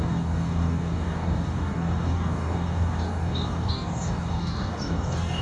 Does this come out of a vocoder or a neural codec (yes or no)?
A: yes